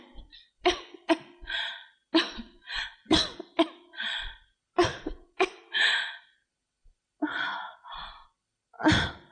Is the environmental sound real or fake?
real